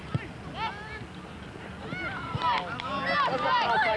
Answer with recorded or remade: recorded